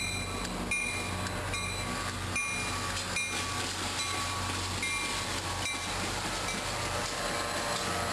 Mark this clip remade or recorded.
recorded